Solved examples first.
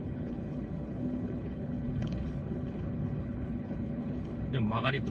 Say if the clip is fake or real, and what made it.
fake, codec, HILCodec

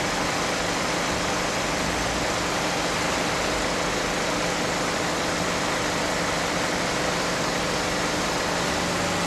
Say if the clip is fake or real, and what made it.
real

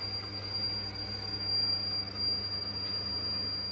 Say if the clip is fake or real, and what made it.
real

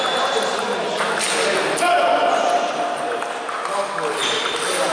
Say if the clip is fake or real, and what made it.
real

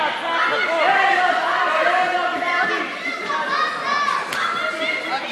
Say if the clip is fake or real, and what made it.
real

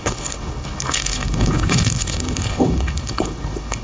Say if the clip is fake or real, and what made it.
fake, codec, HILCodec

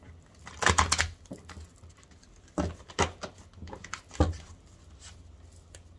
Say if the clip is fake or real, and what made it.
real